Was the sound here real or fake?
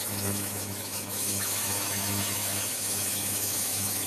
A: fake